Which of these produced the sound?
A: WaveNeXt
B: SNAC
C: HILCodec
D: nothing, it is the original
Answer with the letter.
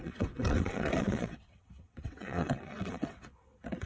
A